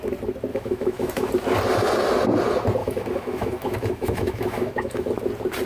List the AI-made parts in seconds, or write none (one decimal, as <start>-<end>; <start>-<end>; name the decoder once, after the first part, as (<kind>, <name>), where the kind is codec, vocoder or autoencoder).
0.5-1.3 (autoencoder, DAC-VAE); 2.8-5.1